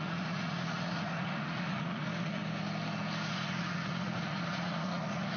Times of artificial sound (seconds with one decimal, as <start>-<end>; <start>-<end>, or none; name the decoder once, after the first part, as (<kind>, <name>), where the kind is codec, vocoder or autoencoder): 0.0-2.4 (vocoder, Vocos); 3.3-5.4